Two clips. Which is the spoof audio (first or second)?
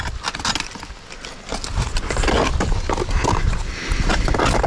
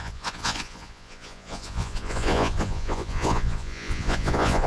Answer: second